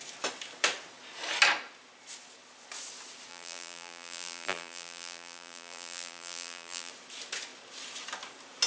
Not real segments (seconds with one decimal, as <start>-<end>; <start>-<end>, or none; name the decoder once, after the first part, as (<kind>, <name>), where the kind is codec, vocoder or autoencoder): 3.3-6.9 (vocoder, BigVGAN v2)